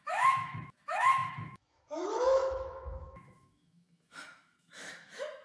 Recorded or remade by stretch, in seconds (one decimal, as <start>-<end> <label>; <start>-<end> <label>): 0.0-5.4 remade